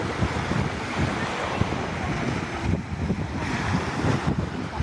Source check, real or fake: real